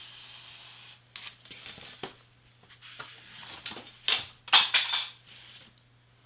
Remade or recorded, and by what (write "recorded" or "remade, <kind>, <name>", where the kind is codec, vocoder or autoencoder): recorded